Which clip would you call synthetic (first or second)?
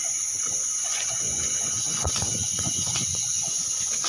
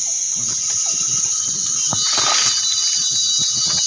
first